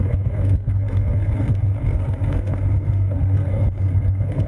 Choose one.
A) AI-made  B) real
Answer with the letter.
A